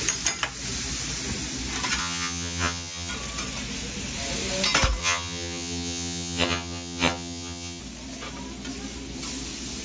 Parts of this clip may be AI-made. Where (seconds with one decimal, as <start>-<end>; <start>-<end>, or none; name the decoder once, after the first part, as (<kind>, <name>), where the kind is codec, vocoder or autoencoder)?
2.0-3.1 (vocoder, HiFi-GAN); 5.0-7.8